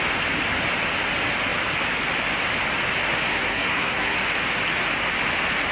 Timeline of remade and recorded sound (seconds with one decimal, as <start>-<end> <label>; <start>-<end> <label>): 0.0-3.3 recorded; 3.3-4.2 remade; 4.2-5.7 recorded